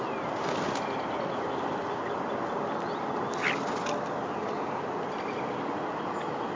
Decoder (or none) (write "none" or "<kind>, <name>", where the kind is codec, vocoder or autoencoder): none